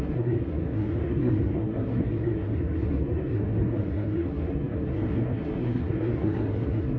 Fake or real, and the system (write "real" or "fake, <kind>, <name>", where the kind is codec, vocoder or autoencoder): fake, codec, SNAC